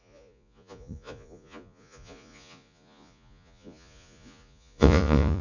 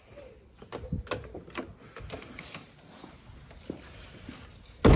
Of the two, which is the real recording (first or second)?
second